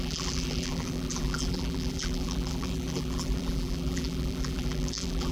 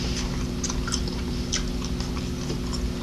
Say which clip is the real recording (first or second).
second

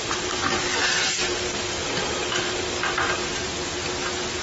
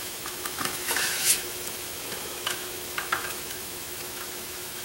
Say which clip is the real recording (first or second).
first